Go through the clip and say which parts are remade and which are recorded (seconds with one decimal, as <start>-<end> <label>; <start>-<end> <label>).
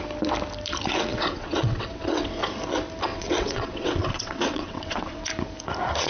0.0-1.1 recorded; 1.1-2.4 remade; 2.4-3.1 recorded; 3.1-5.3 remade; 5.3-6.1 recorded